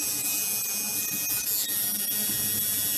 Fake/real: real